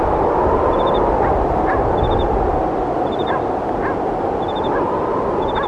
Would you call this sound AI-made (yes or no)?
no